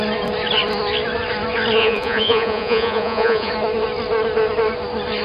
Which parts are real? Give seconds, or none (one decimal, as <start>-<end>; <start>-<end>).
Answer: 0.0-1.8; 3.5-5.2